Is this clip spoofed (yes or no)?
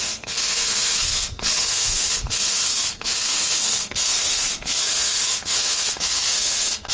yes